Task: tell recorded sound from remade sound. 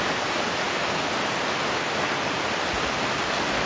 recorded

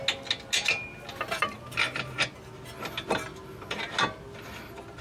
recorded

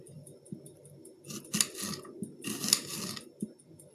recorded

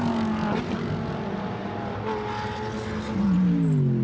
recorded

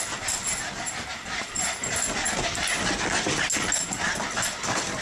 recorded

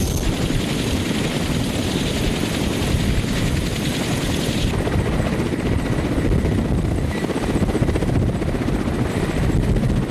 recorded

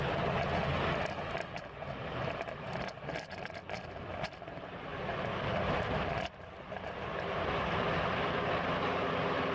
recorded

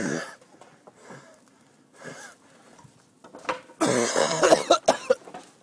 recorded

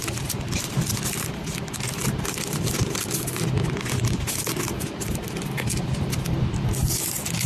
recorded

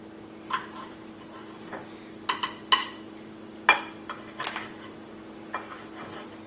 recorded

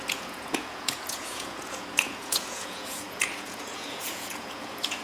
remade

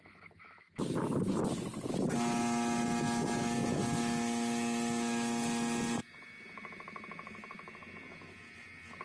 recorded